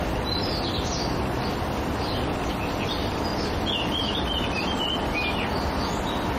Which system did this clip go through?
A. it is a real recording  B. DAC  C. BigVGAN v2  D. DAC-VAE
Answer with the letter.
A